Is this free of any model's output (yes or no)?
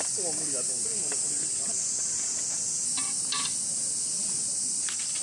yes